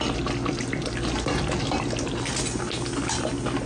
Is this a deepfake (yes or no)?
no